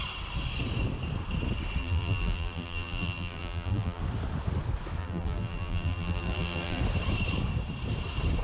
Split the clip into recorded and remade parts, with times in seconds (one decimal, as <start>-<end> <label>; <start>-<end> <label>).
0.0-1.8 recorded; 1.8-4.0 remade; 4.0-5.0 recorded; 5.0-6.8 remade; 6.8-8.4 recorded